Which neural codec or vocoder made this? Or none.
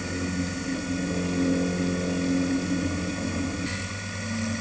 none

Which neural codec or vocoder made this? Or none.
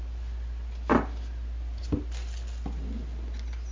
none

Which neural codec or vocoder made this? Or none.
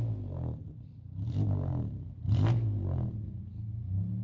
none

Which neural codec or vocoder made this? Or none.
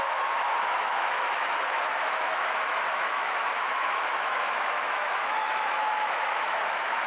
autoencoder, DAC-VAE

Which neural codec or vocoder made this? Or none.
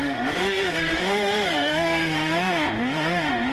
autoencoder, DAC-VAE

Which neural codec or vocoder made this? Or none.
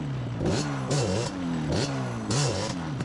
none